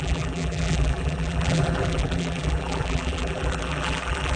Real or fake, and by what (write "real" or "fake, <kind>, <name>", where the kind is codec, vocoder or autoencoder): fake, vocoder, BigVGAN v2